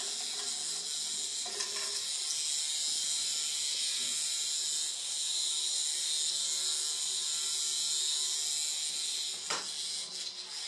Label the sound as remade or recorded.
recorded